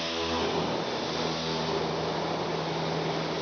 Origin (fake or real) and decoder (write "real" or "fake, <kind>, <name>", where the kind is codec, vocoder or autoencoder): real